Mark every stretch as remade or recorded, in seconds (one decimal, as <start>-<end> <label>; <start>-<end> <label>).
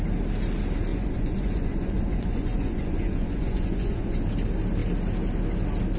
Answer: 0.0-0.9 recorded; 0.9-4.2 remade; 4.2-6.0 recorded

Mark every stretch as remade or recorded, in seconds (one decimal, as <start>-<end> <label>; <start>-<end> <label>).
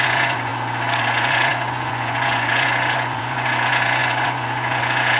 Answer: 0.0-0.5 remade; 0.5-1.0 recorded; 1.0-5.2 remade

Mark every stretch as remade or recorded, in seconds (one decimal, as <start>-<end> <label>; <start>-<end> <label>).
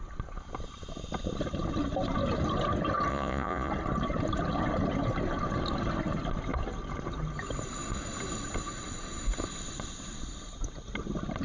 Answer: 0.0-3.1 recorded; 3.1-3.7 remade; 3.7-11.4 recorded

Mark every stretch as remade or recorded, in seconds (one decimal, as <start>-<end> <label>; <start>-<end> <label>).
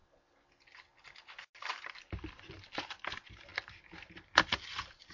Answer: 0.0-5.1 recorded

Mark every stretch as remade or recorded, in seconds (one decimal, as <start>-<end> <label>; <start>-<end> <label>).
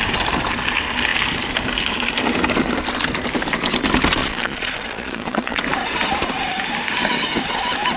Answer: 0.0-4.2 recorded; 4.2-5.6 remade; 5.6-8.0 recorded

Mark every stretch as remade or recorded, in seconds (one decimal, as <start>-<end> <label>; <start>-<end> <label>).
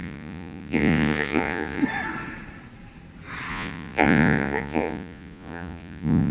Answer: 0.0-1.8 remade; 1.8-3.5 recorded; 3.5-6.3 remade